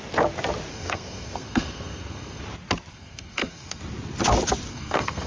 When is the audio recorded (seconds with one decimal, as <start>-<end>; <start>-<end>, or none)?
0.0-0.7; 2.4-2.9; 3.8-4.7